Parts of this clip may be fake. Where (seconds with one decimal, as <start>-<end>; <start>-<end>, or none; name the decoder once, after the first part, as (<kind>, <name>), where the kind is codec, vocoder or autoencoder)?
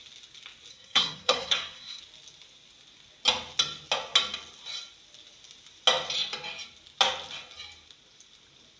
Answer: 0.7-2.0 (codec, SNAC)